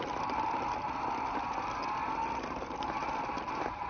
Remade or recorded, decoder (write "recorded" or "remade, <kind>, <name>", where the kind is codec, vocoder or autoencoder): recorded